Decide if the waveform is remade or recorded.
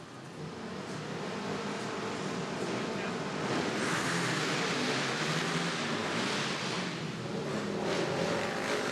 recorded